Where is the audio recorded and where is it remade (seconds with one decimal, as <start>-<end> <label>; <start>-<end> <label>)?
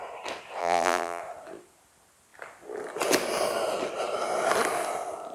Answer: 0.0-0.6 recorded; 0.6-1.2 remade; 1.2-5.3 recorded